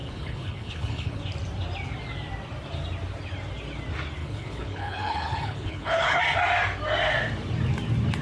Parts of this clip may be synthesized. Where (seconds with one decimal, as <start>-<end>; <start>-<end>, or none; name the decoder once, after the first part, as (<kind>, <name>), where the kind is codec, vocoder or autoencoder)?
0.0-1.2 (codec, HILCodec); 4.2-6.2

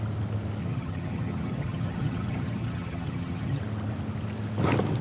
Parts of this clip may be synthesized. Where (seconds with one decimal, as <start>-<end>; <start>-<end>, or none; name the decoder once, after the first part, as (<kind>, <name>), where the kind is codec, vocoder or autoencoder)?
0.6-3.6 (vocoder, HiFi-GAN)

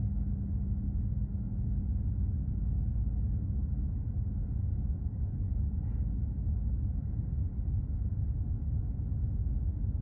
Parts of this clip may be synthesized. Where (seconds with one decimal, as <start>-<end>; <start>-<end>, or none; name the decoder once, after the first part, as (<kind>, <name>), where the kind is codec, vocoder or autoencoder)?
none

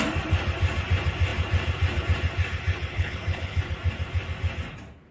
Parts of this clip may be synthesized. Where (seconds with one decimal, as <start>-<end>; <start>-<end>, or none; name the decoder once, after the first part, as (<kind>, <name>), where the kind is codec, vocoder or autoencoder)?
2.9-3.6 (codec, HILCodec)